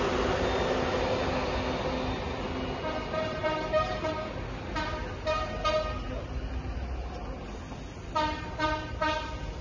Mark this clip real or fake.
real